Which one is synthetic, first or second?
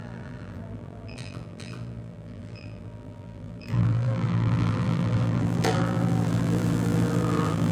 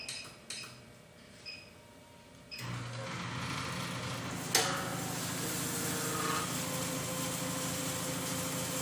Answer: first